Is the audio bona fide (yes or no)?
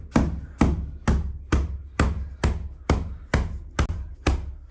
yes